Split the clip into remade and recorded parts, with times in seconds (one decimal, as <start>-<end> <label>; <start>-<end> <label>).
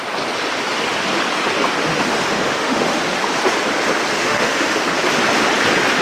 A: 0.0-1.9 recorded; 1.9-3.0 remade; 3.0-4.2 recorded; 4.2-4.8 remade; 4.8-6.0 recorded